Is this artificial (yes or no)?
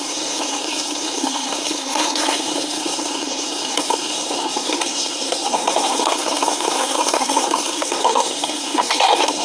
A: yes